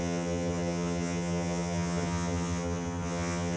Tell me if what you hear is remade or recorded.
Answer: remade